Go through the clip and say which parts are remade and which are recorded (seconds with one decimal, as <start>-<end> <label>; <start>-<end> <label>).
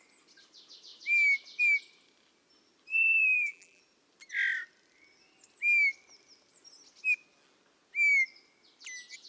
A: 0.0-2.9 recorded; 2.9-3.8 remade; 3.8-9.3 recorded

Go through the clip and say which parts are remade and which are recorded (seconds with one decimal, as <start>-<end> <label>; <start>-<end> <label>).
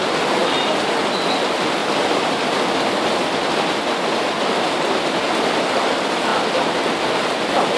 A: 0.0-7.8 recorded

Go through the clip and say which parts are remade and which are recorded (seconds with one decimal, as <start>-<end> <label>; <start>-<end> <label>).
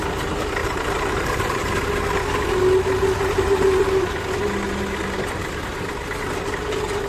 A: 0.0-0.6 recorded; 0.6-1.7 remade; 1.7-3.2 recorded; 3.2-4.2 remade; 4.2-7.1 recorded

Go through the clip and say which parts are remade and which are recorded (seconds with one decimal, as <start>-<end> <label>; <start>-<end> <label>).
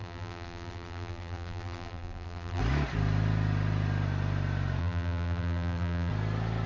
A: 0.0-2.6 remade; 2.6-4.8 recorded; 4.8-6.1 remade; 6.1-6.7 recorded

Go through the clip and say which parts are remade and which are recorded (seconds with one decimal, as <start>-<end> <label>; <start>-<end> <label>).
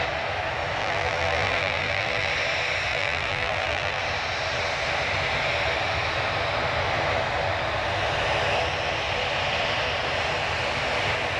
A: 0.0-0.8 recorded; 0.8-2.3 remade; 2.3-2.9 recorded; 2.9-4.0 remade; 4.0-11.4 recorded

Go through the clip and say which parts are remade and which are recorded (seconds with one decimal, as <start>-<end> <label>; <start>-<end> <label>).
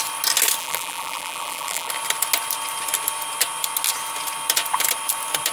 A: 0.0-0.6 recorded; 0.6-1.9 remade; 1.9-5.5 recorded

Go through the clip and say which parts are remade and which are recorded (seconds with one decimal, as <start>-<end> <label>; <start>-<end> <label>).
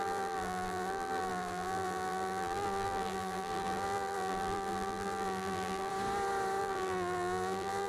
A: 0.0-5.9 remade; 5.9-6.6 recorded; 6.6-7.9 remade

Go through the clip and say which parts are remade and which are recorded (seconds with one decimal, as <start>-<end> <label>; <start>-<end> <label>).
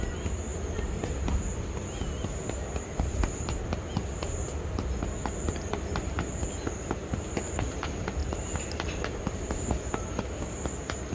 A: 0.0-8.2 recorded; 8.2-9.7 remade; 9.7-11.1 recorded